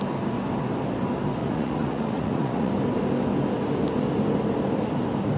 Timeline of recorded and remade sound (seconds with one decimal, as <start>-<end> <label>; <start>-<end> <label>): 0.0-1.4 recorded; 1.4-2.7 remade; 2.7-5.4 recorded